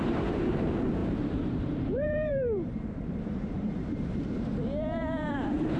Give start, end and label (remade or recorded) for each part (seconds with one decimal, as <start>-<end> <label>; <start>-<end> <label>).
0.0-5.8 remade